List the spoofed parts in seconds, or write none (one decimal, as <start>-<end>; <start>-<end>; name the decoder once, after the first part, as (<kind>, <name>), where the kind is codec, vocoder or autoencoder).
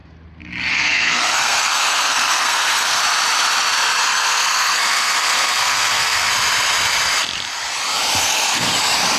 0.7-3.0 (codec, SNAC); 4.0-6.3; 8.2-8.7